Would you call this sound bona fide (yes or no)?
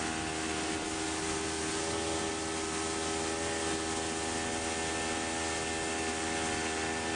yes